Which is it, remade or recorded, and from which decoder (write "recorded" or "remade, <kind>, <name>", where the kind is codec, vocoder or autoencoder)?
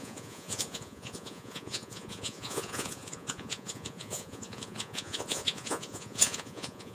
remade, vocoder, Vocos